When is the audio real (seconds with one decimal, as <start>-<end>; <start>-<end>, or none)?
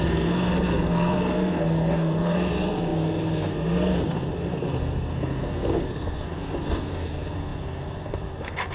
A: none